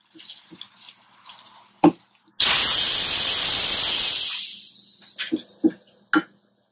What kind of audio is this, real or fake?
real